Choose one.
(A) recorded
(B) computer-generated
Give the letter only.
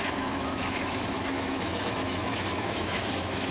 B